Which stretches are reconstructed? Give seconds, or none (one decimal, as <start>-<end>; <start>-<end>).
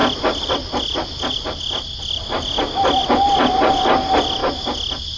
none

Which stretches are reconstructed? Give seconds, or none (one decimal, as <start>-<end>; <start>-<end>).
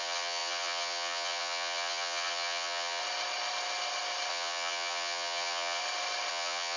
0.0-3.0; 4.3-5.8; 6.3-6.8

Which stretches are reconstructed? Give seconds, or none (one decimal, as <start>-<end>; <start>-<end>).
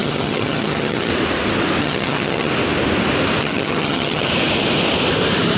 0.0-1.1; 1.8-2.5; 3.4-4.3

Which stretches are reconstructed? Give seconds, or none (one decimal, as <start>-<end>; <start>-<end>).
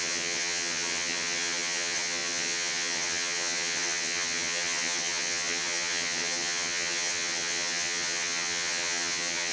0.0-9.5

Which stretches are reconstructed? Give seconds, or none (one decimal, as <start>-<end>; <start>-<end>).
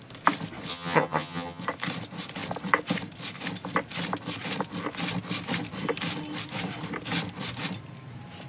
0.7-1.6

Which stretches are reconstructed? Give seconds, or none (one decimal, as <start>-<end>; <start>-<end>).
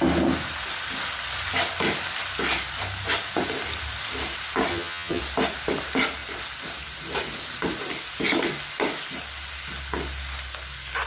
4.7-5.2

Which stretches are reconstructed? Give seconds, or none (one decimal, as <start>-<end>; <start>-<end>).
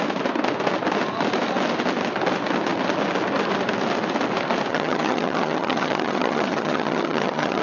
4.7-7.6